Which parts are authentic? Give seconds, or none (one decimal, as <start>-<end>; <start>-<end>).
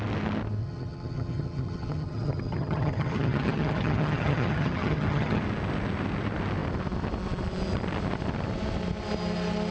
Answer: 0.0-0.6; 5.4-9.7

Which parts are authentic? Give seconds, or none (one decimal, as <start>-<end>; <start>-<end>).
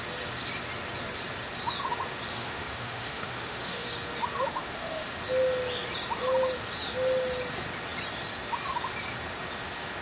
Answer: 0.0-2.3; 3.9-4.5; 5.1-10.0